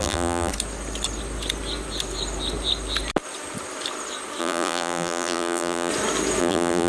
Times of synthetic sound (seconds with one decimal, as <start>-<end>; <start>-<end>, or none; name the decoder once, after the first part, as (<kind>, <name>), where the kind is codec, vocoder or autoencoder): 0.0-0.5 (vocoder, BigVGAN v2); 4.4-5.9; 6.4-6.9